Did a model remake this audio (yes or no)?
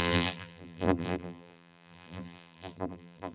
yes